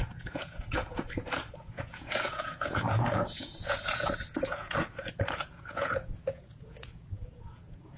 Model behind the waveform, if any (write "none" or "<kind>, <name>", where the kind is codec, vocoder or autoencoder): vocoder, Vocos